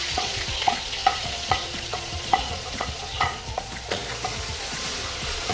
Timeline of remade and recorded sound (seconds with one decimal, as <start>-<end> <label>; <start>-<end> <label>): 0.0-4.0 remade; 4.0-4.6 recorded; 4.6-5.5 remade